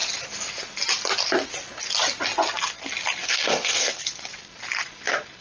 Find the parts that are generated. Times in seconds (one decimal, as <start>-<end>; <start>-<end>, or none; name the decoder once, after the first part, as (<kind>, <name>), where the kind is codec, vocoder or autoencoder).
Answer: 3.2-4.0 (codec, DAC)